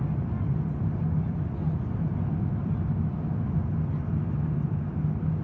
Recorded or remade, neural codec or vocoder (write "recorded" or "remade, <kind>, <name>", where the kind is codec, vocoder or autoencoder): recorded